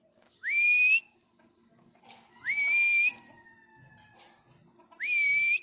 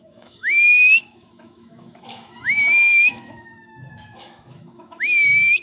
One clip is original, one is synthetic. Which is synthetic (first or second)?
second